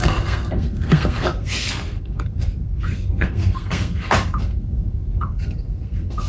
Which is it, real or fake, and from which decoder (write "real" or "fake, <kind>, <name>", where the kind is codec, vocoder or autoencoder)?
fake, codec, SNAC